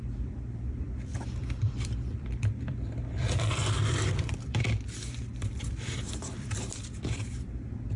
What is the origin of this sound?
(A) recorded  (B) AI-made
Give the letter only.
B